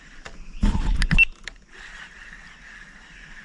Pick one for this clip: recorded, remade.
recorded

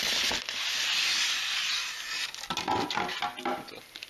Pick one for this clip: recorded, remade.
recorded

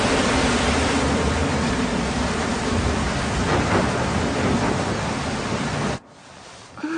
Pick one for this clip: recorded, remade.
recorded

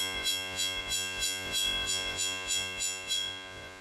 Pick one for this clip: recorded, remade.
remade